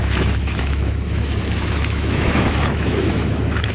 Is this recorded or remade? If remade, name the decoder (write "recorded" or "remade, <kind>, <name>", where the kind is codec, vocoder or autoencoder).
remade, autoencoder, DAC-VAE